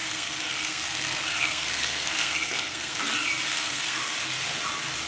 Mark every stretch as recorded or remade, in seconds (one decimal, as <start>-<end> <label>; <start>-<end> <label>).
0.0-3.0 remade; 3.0-3.5 recorded; 3.5-4.0 remade; 4.0-5.1 recorded